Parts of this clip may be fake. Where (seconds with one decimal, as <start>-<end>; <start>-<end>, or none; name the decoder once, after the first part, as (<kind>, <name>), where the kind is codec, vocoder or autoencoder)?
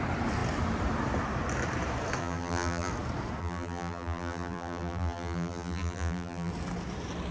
2.2-2.9 (vocoder, BigVGAN v2); 3.4-6.5